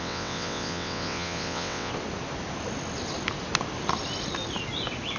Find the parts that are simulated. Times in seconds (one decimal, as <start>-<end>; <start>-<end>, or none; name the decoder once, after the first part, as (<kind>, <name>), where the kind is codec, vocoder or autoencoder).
0.0-1.9 (vocoder, WaveNeXt)